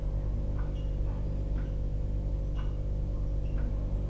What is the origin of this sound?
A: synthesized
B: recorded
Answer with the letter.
B